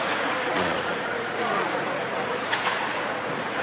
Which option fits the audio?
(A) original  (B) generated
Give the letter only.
B